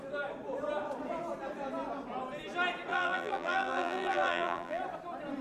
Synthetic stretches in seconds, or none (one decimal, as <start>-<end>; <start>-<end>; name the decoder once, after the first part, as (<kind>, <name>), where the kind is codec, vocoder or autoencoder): 2.9-4.8 (vocoder, BigVGAN v2)